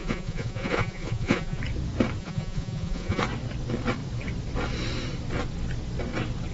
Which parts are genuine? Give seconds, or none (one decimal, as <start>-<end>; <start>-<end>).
1.6-2.2; 3.2-6.5